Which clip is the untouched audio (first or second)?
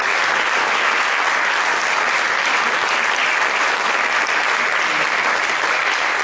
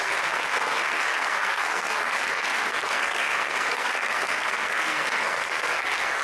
first